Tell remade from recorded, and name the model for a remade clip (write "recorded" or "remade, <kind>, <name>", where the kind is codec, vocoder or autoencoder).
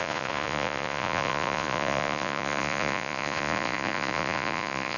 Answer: remade, vocoder, Vocos